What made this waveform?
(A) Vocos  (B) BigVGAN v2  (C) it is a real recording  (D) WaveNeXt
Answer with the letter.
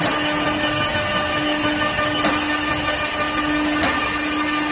C